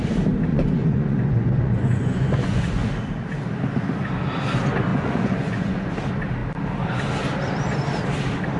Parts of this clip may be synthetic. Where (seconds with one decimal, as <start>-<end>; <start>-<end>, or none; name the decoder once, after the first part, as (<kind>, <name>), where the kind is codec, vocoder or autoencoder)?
0.5-2.9 (vocoder, Vocos); 4.9-5.9